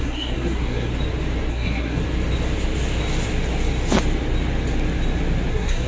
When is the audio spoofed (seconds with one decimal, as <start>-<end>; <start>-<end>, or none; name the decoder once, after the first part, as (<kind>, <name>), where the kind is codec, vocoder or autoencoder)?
0.0-0.9 (codec, SNAC); 1.5-2.0; 5.5-5.9